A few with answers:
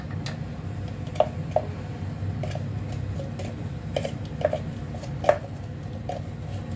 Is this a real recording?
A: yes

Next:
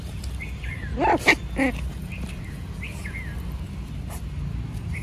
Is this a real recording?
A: yes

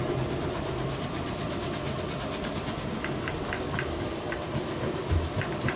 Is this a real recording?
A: yes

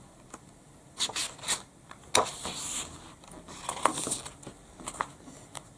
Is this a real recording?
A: yes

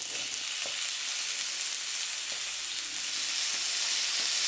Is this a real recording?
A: yes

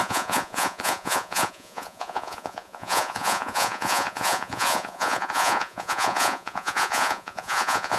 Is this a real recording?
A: no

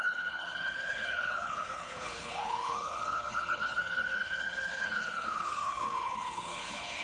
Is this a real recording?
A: no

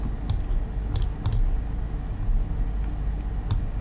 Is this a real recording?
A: yes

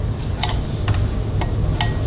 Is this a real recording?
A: yes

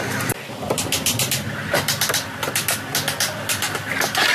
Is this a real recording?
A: yes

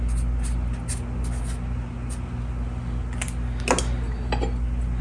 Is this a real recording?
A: yes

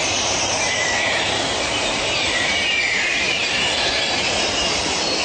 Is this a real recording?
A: no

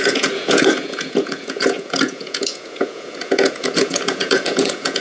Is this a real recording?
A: no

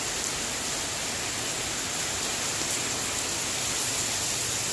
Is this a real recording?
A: yes